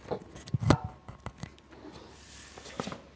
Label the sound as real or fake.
real